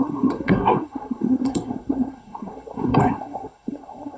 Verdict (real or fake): fake